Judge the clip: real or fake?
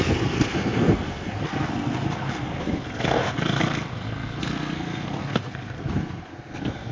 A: fake